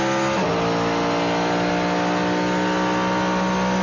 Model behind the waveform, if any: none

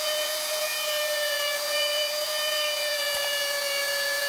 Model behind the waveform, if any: vocoder, Vocos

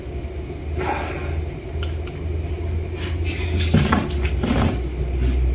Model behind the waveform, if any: none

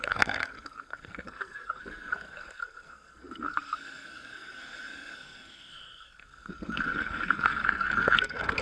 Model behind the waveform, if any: codec, SNAC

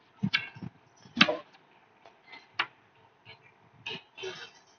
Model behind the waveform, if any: none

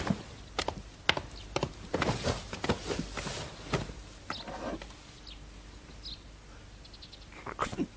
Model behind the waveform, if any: none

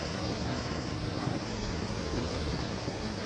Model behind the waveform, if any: codec, SNAC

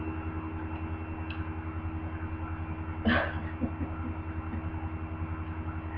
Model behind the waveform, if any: none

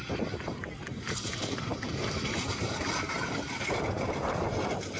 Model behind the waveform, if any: vocoder, BigVGAN v2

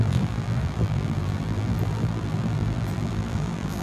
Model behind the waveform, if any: vocoder, BigVGAN v2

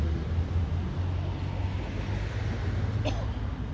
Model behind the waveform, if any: none